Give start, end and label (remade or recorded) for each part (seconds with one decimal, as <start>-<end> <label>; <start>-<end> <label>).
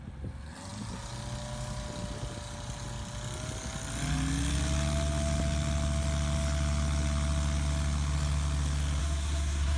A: 0.0-9.0 recorded; 9.0-9.8 remade